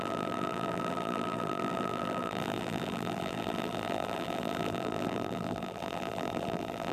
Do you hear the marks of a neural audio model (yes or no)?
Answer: yes